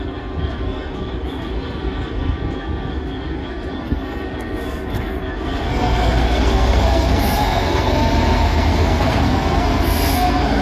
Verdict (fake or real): fake